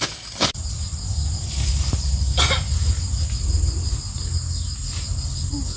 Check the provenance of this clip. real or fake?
real